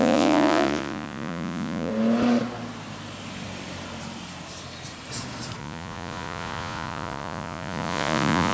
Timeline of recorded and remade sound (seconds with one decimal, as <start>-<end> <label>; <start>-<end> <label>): 0.0-1.9 remade; 1.9-5.6 recorded; 5.6-8.5 remade